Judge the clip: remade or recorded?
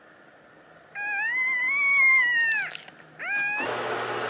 recorded